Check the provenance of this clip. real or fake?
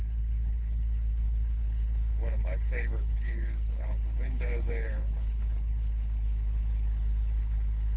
fake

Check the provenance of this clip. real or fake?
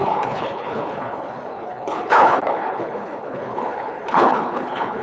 fake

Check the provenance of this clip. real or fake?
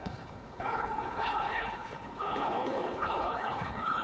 fake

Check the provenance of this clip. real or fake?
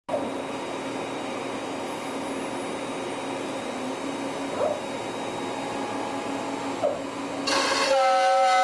real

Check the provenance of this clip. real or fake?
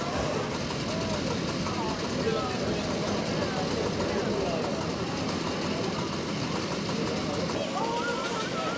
real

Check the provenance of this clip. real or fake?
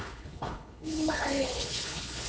fake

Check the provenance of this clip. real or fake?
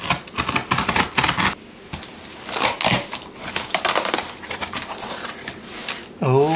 real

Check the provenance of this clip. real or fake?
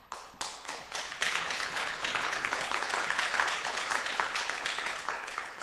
fake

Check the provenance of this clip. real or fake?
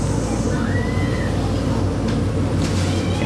real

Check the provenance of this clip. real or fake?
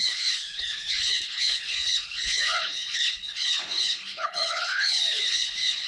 fake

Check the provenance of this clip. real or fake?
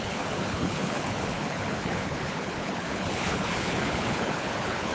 fake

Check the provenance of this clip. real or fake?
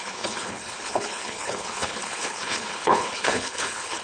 fake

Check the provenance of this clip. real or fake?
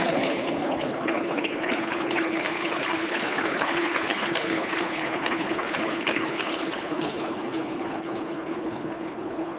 fake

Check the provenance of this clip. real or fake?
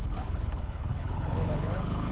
fake